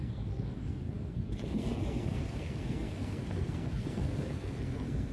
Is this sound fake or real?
fake